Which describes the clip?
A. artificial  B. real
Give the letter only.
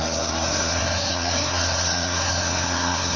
A